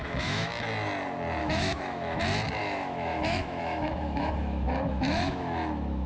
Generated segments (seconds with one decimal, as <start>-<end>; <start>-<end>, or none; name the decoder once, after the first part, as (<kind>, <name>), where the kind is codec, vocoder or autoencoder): 0.0-0.5 (autoencoder, DAC-VAE); 1.4-2.2; 2.6-6.1